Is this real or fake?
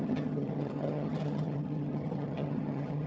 fake